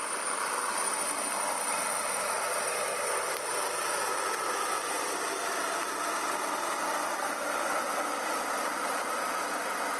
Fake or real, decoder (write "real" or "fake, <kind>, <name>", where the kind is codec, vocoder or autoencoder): real